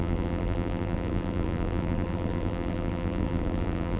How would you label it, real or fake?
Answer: fake